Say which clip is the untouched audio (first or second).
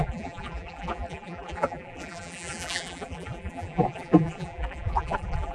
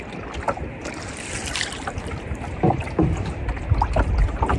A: second